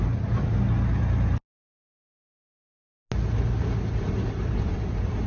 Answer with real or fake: real